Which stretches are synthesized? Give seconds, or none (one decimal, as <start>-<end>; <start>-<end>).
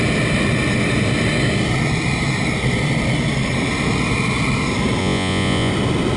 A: 5.0-5.7